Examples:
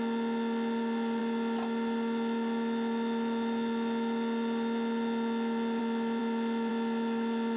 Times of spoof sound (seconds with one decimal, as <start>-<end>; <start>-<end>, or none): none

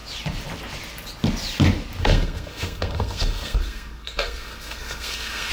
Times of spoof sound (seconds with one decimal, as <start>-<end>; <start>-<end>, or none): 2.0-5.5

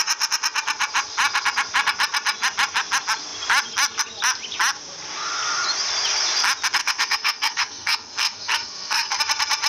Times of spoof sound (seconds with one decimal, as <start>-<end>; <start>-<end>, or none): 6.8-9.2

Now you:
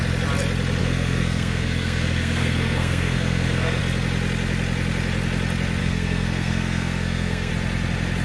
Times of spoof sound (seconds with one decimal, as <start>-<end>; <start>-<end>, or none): 0.8-3.8; 5.8-7.5

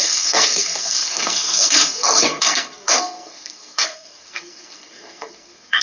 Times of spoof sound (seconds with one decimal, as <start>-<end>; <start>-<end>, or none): 0.0-5.8

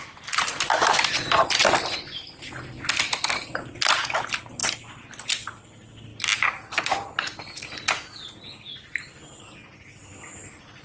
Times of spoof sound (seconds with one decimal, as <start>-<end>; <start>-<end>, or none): none

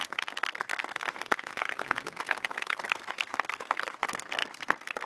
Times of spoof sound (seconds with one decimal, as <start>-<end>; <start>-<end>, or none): 0.0-5.1